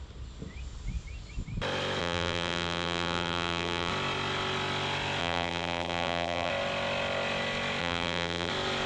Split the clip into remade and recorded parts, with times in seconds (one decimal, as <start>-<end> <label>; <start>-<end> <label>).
0.0-2.0 recorded; 2.0-3.9 remade; 3.9-5.2 recorded; 5.2-6.5 remade; 6.5-7.8 recorded; 7.8-8.5 remade; 8.5-8.9 recorded